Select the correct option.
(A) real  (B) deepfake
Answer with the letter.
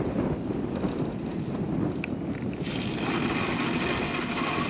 A